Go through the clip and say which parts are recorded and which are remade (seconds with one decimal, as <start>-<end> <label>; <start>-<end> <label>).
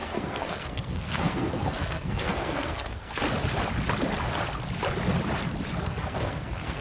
0.0-3.2 remade; 3.2-5.8 recorded; 5.8-6.8 remade